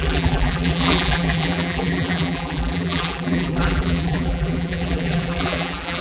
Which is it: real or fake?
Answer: fake